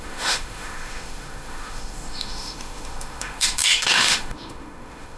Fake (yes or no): yes